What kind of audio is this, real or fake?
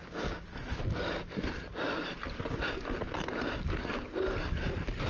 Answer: real